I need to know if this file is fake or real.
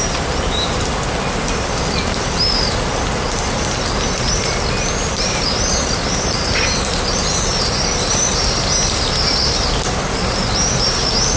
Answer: real